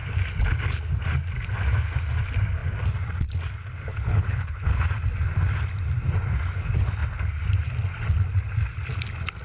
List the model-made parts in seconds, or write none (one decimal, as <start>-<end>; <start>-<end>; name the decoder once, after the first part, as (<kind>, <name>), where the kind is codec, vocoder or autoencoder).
3.9-4.8 (codec, HILCodec)

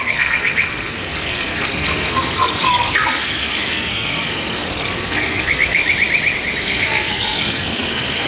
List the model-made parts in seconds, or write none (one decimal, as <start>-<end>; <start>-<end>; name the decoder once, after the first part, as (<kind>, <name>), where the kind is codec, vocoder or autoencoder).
0.0-5.8 (codec, SNAC); 6.6-8.3

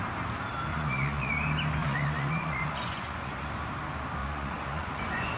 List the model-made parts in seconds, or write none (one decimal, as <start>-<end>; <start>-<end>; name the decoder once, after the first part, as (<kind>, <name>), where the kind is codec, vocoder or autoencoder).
0.7-1.3 (vocoder, Vocos); 1.8-3.5; 4.2-5.4